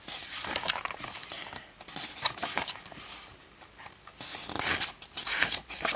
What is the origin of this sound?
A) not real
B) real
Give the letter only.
B